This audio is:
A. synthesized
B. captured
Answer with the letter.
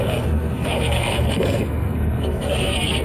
A